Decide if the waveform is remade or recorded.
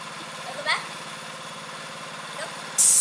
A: recorded